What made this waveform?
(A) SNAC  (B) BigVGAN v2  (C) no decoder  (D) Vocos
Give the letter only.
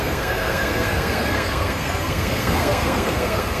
A